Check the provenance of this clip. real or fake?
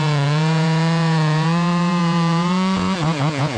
fake